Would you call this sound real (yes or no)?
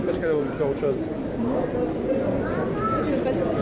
yes